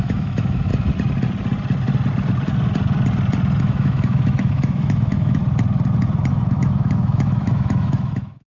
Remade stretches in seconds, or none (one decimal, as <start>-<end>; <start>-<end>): 0.0-0.7; 3.6-5.4; 6.3-8.5